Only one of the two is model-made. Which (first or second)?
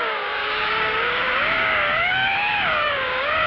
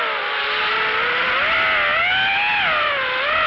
first